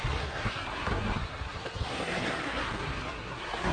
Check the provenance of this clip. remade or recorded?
remade